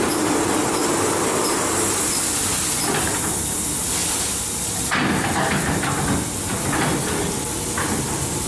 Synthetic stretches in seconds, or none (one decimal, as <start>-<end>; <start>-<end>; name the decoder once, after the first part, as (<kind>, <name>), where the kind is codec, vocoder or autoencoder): none